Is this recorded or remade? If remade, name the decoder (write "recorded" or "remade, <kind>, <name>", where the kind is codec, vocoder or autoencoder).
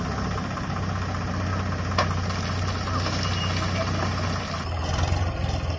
recorded